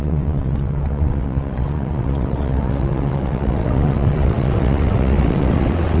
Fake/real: fake